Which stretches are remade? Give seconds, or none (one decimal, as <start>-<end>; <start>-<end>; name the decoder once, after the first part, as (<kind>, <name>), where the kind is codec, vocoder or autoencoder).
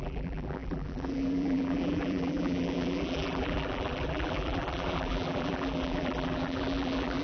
0.0-7.2 (vocoder, BigVGAN v2)